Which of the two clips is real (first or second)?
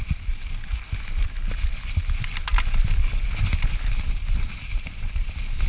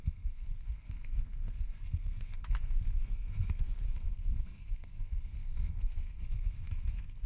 first